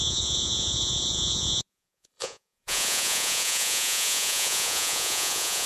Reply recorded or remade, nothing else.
remade